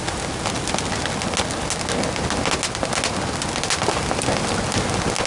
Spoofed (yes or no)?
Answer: no